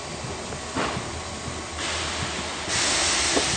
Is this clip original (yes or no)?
yes